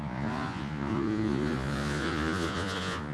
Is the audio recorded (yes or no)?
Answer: no